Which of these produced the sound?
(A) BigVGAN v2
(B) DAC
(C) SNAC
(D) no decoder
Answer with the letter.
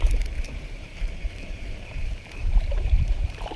A